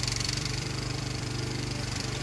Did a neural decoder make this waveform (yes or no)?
yes